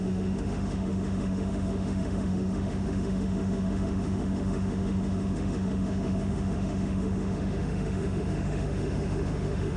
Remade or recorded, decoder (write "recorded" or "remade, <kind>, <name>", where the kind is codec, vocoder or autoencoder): remade, autoencoder, DAC-VAE